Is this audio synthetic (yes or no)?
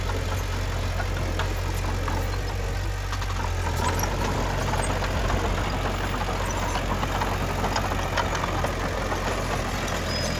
no